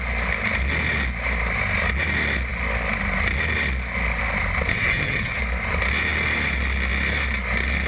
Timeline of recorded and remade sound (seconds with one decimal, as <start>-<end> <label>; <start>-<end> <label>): 0.0-4.7 recorded; 4.7-5.4 remade; 5.4-7.9 recorded